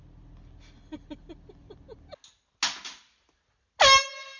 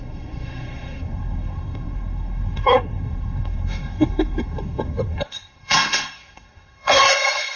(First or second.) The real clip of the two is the first